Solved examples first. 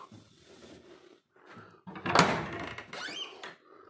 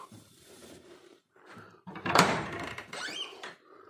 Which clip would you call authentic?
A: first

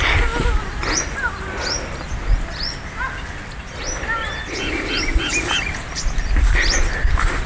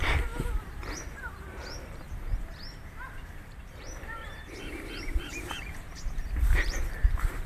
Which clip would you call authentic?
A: first